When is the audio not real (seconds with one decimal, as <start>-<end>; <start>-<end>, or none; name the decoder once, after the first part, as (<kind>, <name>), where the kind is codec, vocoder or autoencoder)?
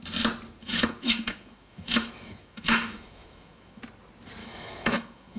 0.6-3.8 (autoencoder, DAC-VAE); 4.4-5.4